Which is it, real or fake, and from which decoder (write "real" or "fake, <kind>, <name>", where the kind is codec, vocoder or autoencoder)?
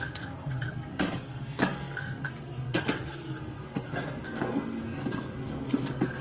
fake, codec, SNAC